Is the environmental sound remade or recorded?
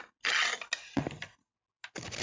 recorded